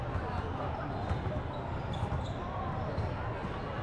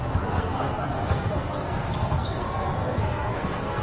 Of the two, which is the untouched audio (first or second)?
first